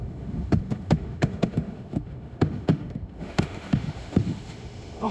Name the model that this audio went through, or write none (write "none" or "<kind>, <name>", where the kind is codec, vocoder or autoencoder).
autoencoder, DAC-VAE